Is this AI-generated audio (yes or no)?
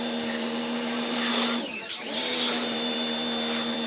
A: yes